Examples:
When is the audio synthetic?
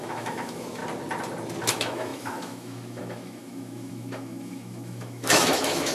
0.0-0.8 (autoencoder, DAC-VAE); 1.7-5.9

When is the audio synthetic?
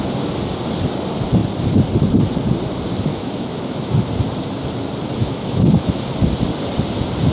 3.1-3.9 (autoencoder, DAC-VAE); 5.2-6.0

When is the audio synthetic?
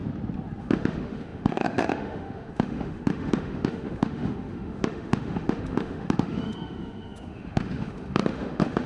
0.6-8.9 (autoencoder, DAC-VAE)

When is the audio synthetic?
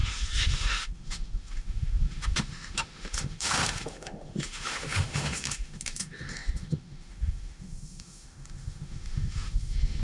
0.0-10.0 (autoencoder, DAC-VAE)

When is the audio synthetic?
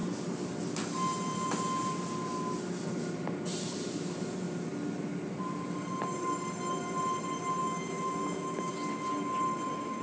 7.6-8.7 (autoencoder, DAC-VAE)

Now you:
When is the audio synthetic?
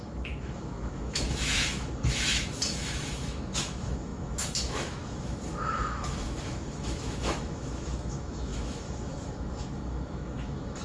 0.0-10.8 (autoencoder, DAC-VAE)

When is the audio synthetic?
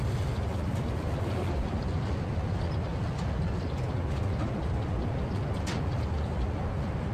none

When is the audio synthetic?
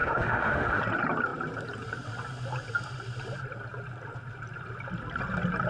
0.0-0.8 (autoencoder, DAC-VAE)